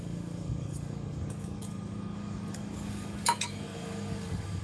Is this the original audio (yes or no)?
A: no